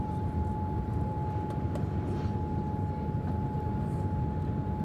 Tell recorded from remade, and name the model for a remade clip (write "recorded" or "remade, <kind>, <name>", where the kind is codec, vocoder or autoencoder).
recorded